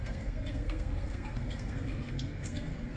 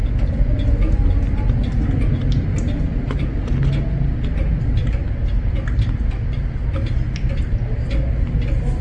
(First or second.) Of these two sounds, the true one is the second